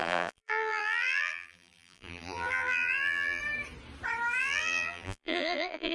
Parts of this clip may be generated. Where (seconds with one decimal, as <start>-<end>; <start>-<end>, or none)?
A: 0.0-3.4; 4.4-5.9